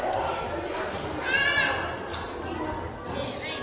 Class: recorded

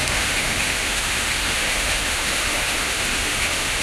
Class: remade